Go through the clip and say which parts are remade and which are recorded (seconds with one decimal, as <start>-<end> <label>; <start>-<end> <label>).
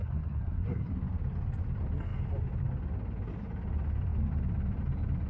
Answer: 0.0-0.9 remade; 0.9-5.3 recorded